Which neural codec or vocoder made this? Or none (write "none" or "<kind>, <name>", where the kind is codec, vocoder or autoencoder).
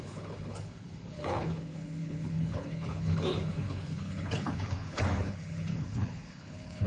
codec, HILCodec